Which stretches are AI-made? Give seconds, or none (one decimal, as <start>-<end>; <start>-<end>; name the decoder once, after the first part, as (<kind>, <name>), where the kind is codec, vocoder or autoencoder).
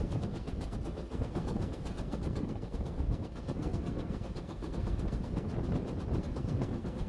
0.0-5.5 (codec, SNAC); 6.2-7.1